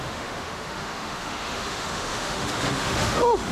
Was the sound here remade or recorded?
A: remade